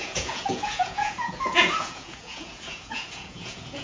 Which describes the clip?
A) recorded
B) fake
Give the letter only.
B